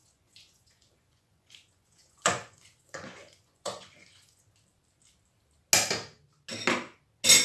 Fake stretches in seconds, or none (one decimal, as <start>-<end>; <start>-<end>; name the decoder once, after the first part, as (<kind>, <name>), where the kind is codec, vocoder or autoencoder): 0.0-4.4 (vocoder, Vocos)